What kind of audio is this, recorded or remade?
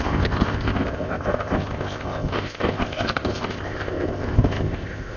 remade